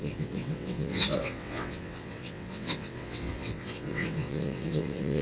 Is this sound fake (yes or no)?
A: yes